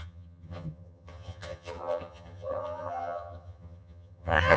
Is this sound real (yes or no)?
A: no